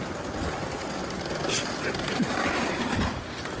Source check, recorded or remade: recorded